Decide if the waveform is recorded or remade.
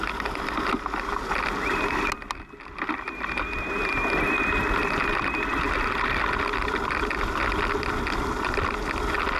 recorded